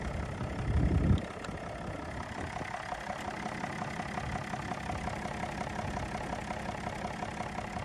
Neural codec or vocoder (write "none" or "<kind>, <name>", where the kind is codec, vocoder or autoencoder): none